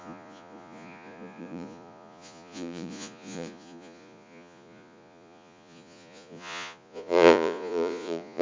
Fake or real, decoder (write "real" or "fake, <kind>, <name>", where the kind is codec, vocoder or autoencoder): fake, vocoder, Vocos